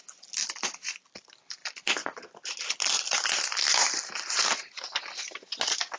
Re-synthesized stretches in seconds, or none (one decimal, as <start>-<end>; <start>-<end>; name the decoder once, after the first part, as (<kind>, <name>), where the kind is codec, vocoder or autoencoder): none